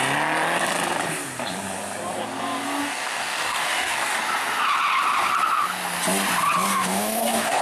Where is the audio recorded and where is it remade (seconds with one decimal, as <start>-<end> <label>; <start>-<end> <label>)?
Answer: 0.0-2.8 recorded; 2.8-4.2 remade; 4.2-6.7 recorded; 6.7-7.6 remade